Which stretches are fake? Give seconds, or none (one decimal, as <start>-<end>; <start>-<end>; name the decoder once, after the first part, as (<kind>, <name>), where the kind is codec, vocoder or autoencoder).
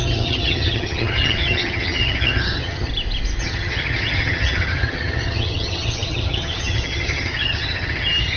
0.0-2.9 (vocoder, HiFi-GAN); 3.4-8.4